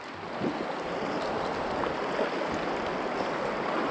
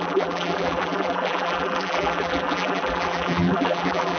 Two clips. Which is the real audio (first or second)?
first